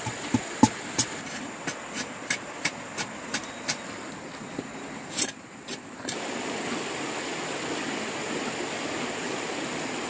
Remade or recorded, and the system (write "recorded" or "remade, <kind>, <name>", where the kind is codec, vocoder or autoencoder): recorded